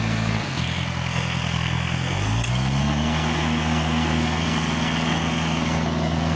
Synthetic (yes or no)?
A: yes